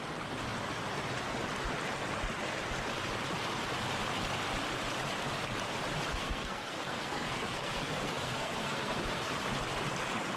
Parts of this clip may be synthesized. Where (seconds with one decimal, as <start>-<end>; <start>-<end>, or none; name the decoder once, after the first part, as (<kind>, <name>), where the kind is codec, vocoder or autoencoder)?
6.1-9.3 (codec, SNAC)